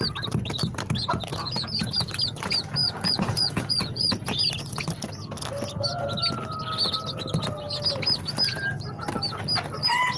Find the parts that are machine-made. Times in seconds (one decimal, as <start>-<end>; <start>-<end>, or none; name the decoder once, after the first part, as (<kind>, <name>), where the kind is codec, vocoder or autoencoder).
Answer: 1.3-2.1 (vocoder, Vocos); 2.8-4.5